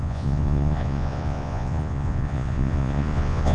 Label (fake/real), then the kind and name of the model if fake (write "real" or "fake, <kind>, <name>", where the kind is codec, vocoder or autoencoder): fake, vocoder, Vocos